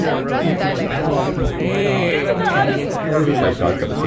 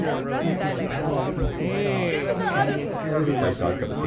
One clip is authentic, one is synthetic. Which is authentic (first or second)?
second